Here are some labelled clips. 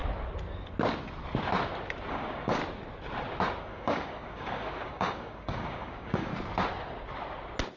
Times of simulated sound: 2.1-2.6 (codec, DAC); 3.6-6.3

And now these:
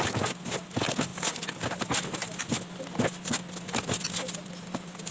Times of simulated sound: none

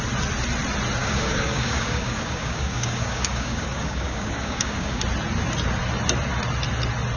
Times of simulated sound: 1.0-5.0 (codec, DAC)

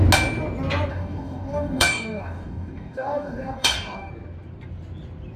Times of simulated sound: 0.9-4.1 (codec, DAC)

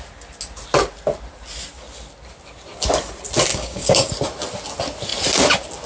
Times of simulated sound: 3.5-4.1 (codec, DAC)

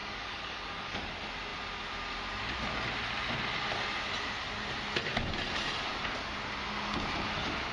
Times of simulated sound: 0.0-1.1 (codec, DAC)

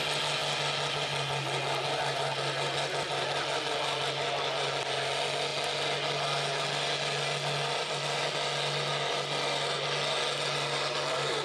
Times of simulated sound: none

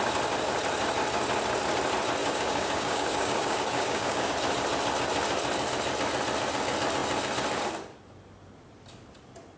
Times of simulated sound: 2.2-4.3 (codec, DAC)